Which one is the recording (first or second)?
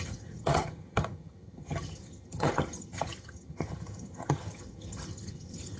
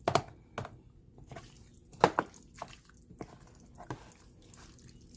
second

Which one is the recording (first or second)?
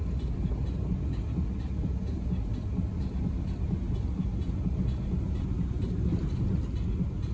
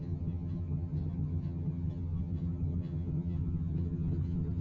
first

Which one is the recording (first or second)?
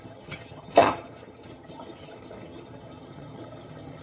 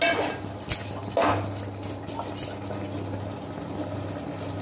second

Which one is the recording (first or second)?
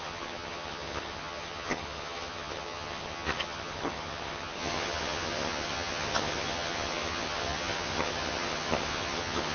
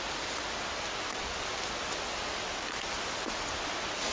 second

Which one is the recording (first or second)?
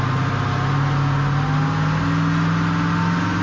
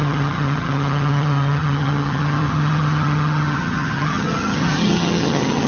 first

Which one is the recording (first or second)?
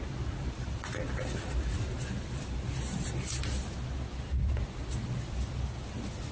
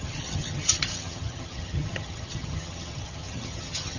first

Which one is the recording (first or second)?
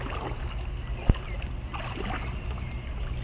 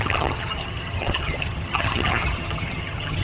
first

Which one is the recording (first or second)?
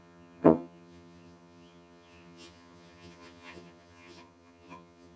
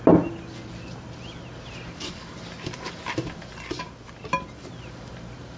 second